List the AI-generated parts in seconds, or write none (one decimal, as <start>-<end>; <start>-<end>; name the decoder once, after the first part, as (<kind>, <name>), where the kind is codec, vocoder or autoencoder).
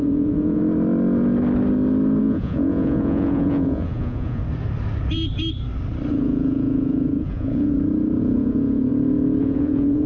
0.0-0.6 (vocoder, Vocos); 2.2-4.4; 6.1-7.7; 8.2-8.9; 9.4-10.1